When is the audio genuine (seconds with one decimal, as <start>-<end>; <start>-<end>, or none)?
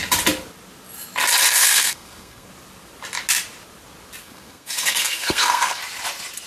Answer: 0.0-1.5; 2.5-4.2; 5.8-6.5